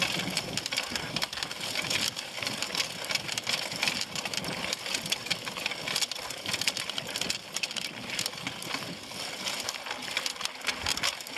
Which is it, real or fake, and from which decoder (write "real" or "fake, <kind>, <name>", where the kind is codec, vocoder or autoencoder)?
real